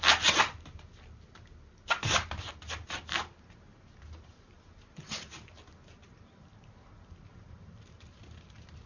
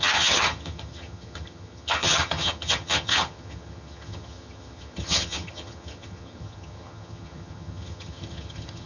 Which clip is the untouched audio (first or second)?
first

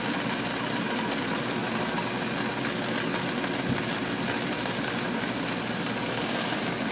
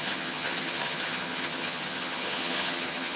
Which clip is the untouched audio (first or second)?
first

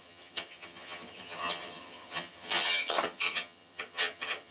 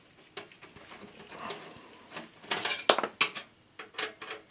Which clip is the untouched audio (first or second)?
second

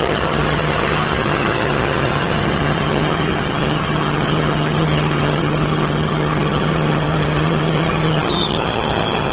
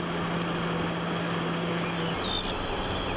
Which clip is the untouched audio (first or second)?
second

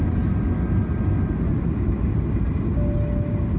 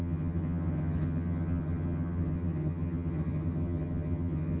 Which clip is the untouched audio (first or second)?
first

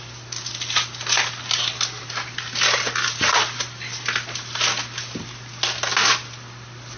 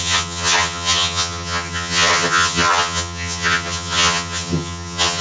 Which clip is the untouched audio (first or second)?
first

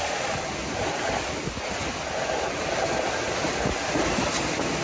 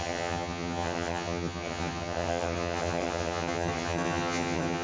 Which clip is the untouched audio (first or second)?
first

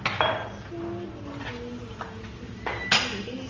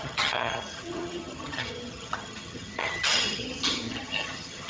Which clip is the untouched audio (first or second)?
first